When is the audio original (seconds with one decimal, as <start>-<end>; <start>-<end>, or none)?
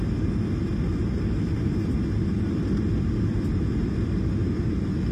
0.0-5.1